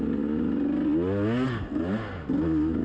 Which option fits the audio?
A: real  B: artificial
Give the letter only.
A